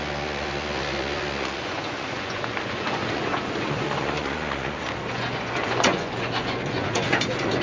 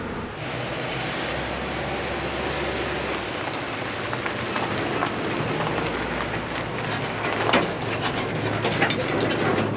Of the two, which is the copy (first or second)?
first